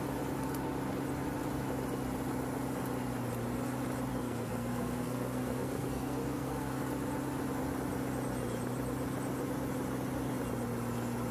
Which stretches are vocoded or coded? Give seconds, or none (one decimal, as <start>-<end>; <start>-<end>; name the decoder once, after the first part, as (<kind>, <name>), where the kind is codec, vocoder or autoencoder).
4.1-6.9 (codec, SNAC)